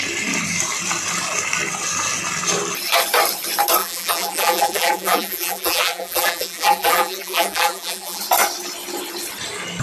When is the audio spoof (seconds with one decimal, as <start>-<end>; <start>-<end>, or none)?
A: 3.8-8.2